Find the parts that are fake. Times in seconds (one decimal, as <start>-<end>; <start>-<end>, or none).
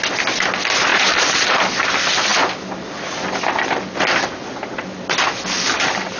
0.9-1.7